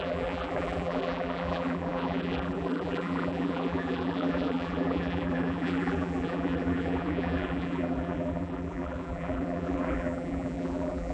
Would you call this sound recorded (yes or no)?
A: no